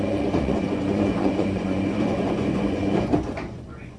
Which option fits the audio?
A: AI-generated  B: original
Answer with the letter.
A